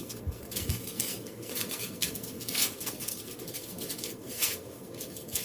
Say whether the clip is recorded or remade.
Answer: remade